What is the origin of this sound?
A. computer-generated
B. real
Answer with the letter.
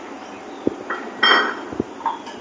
B